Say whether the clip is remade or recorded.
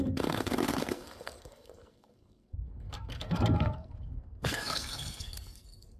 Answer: remade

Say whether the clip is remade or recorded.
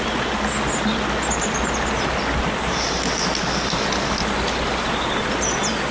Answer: recorded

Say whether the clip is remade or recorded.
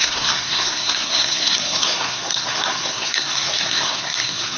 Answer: remade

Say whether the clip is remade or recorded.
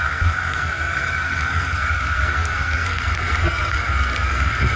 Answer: remade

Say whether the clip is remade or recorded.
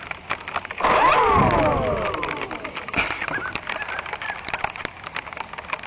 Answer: recorded